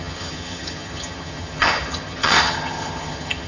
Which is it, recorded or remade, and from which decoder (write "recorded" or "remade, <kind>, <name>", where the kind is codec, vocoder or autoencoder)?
remade, vocoder, HiFi-GAN